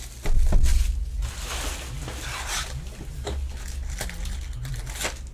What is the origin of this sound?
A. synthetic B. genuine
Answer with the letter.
B